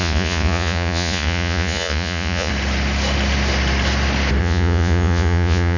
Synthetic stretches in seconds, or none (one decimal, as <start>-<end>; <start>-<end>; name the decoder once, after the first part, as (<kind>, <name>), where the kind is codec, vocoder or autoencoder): 0.0-2.5 (vocoder, Vocos); 4.4-5.8